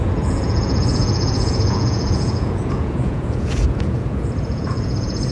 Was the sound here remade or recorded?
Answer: remade